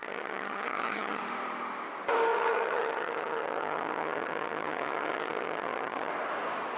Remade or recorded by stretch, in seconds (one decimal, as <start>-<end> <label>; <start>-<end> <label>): 0.0-1.2 remade; 1.2-2.3 recorded; 2.3-6.1 remade; 6.1-6.8 recorded